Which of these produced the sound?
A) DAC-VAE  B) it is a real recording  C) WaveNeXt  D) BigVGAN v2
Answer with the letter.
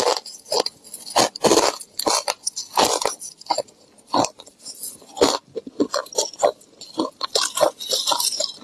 B